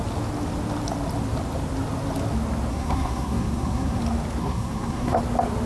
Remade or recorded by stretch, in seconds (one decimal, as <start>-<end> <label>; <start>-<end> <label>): 0.0-2.7 recorded; 2.7-4.0 remade; 4.0-4.4 recorded; 4.4-5.2 remade; 5.2-5.7 recorded

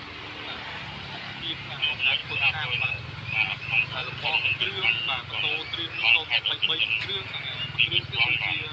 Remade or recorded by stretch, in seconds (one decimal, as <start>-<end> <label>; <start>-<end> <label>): 0.0-8.7 recorded

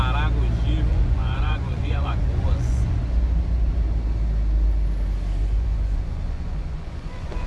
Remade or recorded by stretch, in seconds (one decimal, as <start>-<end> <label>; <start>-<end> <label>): 0.0-0.9 recorded; 0.9-3.0 remade; 3.0-5.4 recorded; 5.4-7.5 remade

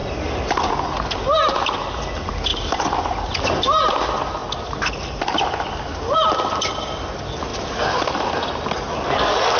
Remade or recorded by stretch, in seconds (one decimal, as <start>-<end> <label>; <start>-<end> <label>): 0.0-7.5 recorded; 7.5-8.3 remade; 8.3-9.6 recorded

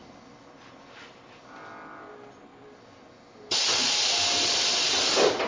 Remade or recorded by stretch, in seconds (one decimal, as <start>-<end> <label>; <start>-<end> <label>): 0.0-5.5 recorded